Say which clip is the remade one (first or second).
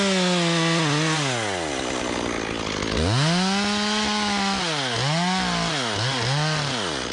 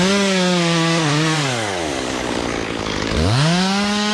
second